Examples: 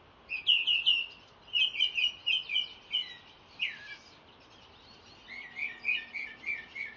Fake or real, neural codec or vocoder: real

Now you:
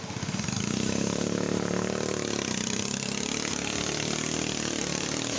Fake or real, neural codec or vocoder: fake, vocoder, BigVGAN v2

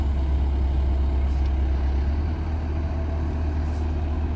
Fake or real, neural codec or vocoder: real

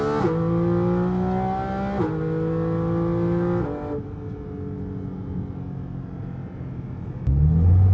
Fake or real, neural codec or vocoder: real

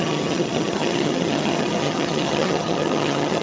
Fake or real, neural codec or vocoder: fake, vocoder, HiFi-GAN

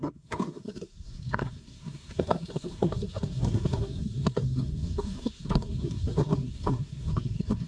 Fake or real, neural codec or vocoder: fake, codec, SNAC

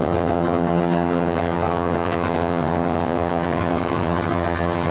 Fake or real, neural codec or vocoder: fake, vocoder, HiFi-GAN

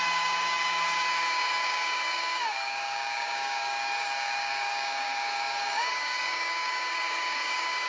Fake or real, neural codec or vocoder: fake, codec, DAC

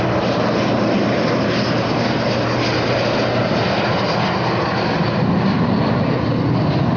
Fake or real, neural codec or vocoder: real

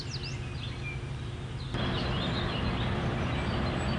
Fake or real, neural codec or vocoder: real